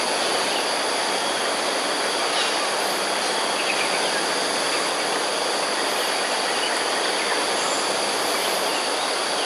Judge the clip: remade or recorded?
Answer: recorded